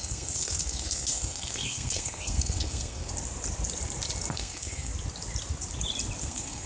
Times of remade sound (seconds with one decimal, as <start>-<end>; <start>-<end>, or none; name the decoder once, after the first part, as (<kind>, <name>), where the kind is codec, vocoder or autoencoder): 0.0-3.1 (codec, SNAC); 4.3-4.9; 6.2-6.7